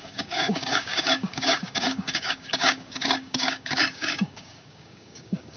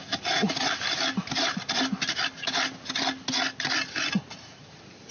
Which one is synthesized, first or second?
first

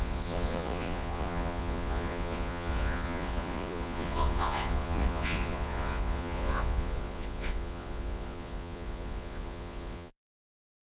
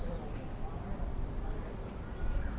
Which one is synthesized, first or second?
first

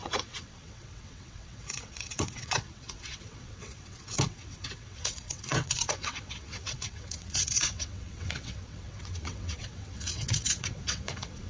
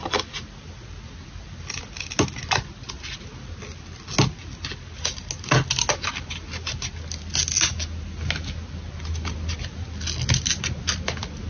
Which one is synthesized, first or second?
first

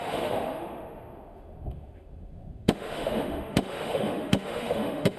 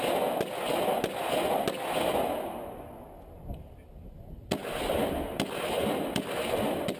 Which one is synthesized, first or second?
first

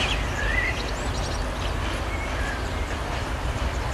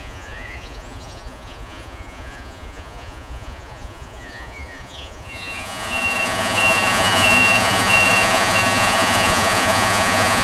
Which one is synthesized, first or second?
second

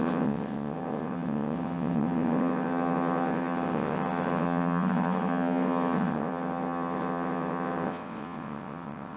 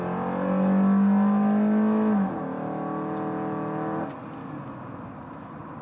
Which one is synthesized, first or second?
first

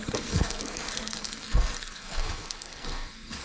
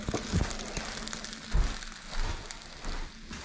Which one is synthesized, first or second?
first